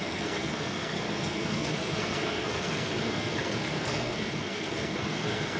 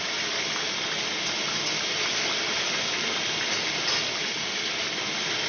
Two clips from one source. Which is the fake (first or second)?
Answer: first